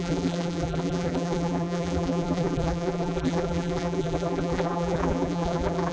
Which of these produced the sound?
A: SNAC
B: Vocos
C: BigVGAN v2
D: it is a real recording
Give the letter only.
C